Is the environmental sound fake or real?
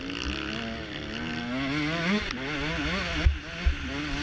real